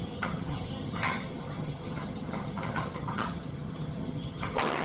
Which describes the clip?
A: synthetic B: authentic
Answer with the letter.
A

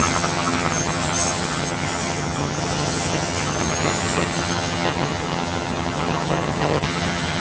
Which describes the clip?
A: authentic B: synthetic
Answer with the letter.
B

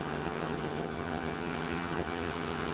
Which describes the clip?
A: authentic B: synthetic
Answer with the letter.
B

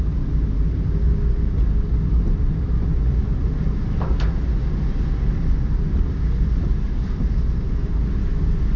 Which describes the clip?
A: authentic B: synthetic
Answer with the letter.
A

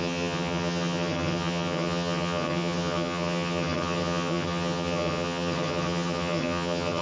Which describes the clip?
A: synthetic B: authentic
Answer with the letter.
A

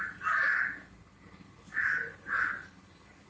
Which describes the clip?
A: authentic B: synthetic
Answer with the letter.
A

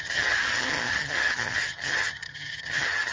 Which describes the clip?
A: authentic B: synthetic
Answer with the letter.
B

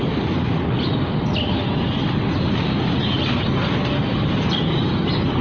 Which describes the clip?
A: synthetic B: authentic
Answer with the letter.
B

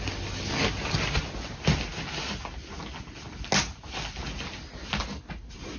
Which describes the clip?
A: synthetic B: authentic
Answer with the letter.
B